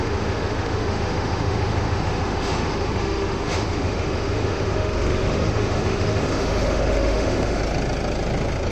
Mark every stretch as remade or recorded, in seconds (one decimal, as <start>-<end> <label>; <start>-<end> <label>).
0.0-7.6 remade; 7.6-8.7 recorded